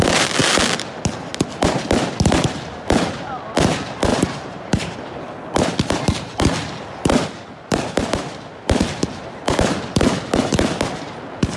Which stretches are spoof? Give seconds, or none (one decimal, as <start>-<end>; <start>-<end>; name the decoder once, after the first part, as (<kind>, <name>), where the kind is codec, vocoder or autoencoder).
4.1-4.9 (vocoder, BigVGAN v2)